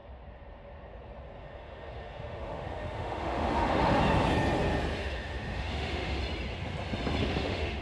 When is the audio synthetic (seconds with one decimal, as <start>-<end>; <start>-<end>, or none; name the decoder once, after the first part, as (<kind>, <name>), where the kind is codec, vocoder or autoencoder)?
1.4-4.0 (autoencoder, DAC-VAE); 5.0-6.2; 7.2-7.8